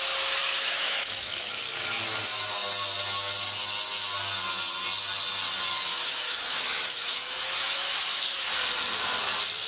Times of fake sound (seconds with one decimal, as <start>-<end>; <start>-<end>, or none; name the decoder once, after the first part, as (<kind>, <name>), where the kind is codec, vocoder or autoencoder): 0.4-1.6 (autoencoder, DAC-VAE); 5.9-8.5